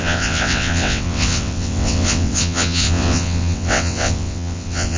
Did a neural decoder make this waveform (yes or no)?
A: yes